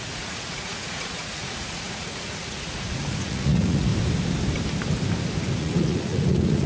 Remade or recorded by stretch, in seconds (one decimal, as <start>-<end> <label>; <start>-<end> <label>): 0.0-3.9 remade; 3.9-5.6 recorded; 5.6-6.7 remade